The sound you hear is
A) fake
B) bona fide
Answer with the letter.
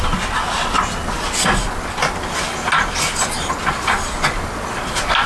B